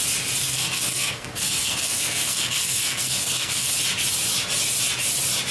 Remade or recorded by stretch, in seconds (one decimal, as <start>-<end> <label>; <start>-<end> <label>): 0.0-0.4 recorded; 0.4-3.7 remade; 3.7-5.5 recorded